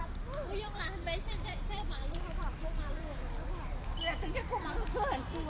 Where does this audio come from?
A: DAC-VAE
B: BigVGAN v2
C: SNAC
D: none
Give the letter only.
B